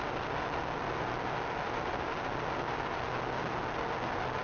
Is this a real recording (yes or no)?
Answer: yes